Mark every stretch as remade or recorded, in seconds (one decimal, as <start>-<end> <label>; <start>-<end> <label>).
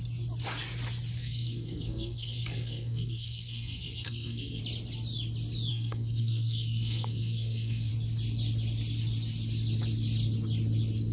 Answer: 0.0-1.2 recorded; 1.2-4.6 remade; 4.6-5.7 recorded; 5.7-7.9 remade; 7.9-11.1 recorded